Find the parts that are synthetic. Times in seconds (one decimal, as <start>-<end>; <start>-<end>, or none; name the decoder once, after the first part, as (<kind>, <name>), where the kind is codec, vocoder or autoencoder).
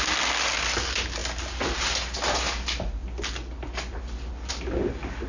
none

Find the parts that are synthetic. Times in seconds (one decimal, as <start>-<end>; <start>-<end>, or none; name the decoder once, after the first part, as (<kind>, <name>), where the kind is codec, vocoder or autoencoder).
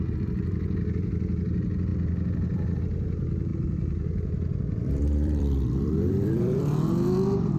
3.5-6.6 (vocoder, BigVGAN v2)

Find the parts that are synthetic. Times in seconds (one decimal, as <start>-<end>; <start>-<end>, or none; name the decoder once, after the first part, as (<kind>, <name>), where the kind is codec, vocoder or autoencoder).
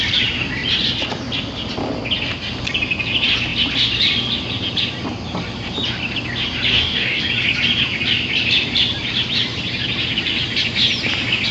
6.7-7.2 (codec, DAC)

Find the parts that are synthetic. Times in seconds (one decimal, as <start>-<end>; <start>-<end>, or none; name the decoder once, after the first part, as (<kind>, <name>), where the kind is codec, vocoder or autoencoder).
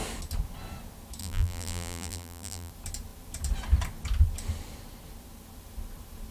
1.2-2.7 (vocoder, BigVGAN v2)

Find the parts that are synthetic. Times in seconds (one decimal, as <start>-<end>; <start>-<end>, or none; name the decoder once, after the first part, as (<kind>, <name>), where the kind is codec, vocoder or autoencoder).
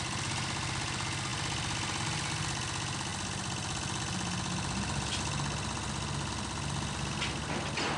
none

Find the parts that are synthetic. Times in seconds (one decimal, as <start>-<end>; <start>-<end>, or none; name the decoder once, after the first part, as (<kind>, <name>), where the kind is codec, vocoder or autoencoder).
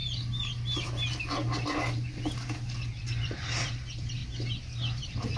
3.2-4.2 (vocoder, BigVGAN v2); 5.0-5.4